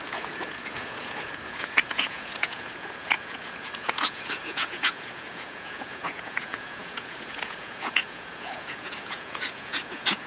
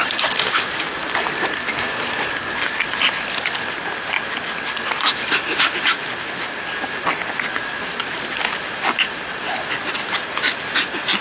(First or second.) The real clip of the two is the second